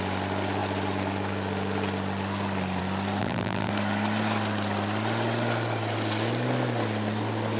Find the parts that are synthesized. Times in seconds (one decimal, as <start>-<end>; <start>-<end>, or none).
3.2-3.7